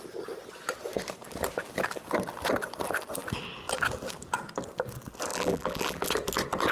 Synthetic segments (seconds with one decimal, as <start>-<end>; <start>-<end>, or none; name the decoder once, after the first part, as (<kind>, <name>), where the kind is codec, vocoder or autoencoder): 5.3-6.1 (vocoder, BigVGAN v2)